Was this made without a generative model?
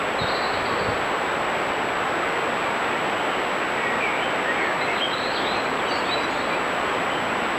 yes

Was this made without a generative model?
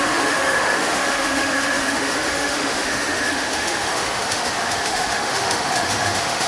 no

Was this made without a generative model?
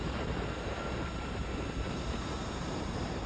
no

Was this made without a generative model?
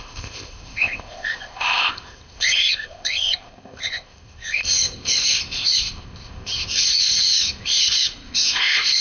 no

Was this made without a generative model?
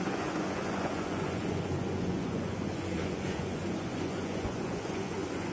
no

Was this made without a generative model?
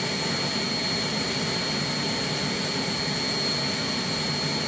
yes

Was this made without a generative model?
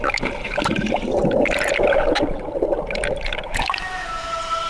yes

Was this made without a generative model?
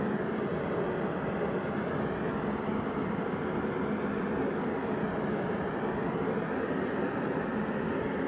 yes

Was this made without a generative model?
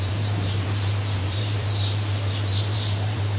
no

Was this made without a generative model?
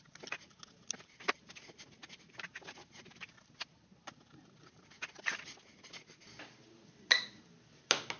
yes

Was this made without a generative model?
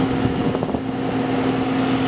yes